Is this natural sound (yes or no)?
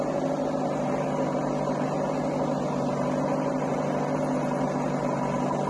yes